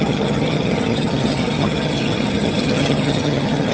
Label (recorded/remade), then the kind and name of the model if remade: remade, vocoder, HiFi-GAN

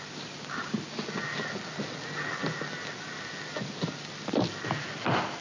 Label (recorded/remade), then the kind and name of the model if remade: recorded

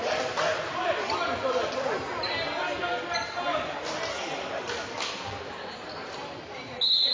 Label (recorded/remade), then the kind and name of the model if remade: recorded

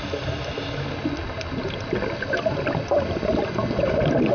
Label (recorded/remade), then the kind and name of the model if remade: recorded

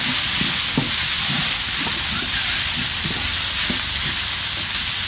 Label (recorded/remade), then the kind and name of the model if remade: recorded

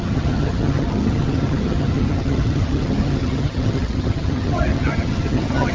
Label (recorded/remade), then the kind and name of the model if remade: remade, vocoder, HiFi-GAN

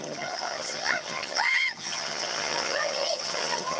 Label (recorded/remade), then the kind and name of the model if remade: remade, vocoder, HiFi-GAN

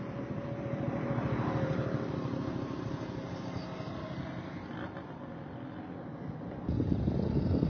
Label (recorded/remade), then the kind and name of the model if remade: recorded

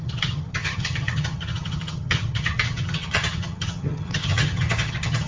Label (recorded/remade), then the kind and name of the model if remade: remade, vocoder, HiFi-GAN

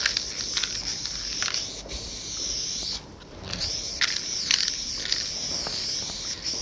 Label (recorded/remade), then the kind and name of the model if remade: recorded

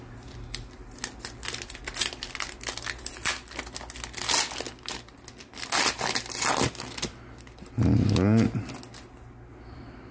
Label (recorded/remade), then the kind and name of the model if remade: recorded